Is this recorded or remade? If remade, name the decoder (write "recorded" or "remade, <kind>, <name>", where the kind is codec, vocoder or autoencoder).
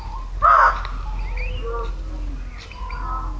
recorded